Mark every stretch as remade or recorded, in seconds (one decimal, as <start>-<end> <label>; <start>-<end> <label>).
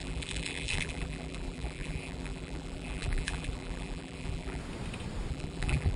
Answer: 0.0-4.6 remade; 4.6-5.3 recorded; 5.3-6.0 remade